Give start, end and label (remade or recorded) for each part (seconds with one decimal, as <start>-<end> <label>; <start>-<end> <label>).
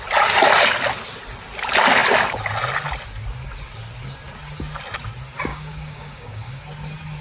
0.0-5.5 recorded; 5.5-6.6 remade; 6.6-7.2 recorded